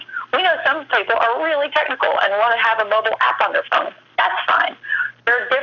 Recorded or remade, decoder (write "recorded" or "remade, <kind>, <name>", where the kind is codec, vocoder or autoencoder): recorded